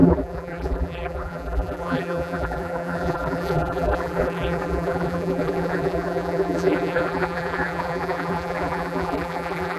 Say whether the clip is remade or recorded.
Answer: remade